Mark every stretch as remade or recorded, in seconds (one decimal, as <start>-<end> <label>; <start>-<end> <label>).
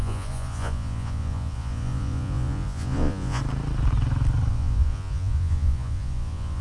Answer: 0.0-3.4 remade; 3.4-4.5 recorded; 4.5-6.6 remade